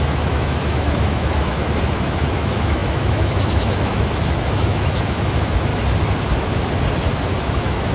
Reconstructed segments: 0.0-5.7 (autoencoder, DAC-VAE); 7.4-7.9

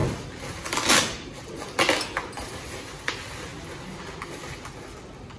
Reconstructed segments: none

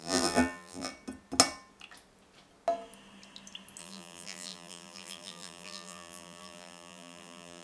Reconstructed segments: 0.0-0.9 (vocoder, BigVGAN v2); 3.8-7.6